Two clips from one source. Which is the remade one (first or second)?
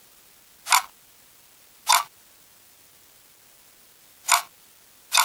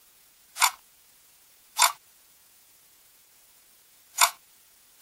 second